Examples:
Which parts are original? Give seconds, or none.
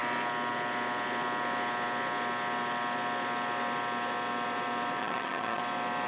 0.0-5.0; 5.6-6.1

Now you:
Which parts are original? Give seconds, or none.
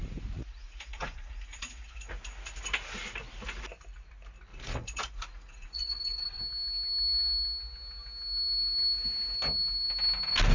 2.1-4.5; 6.4-10.5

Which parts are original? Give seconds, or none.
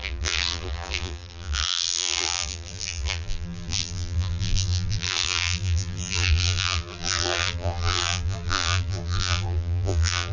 none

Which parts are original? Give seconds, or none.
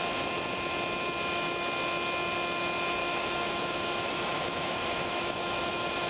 0.0-3.0